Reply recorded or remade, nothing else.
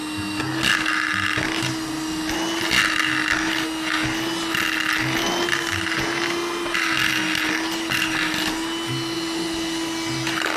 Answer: recorded